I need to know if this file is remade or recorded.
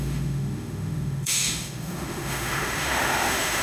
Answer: remade